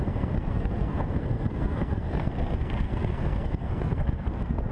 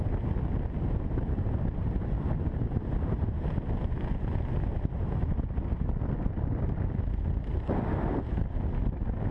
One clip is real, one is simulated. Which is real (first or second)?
second